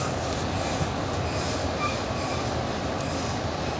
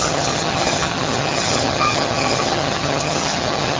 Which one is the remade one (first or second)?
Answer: second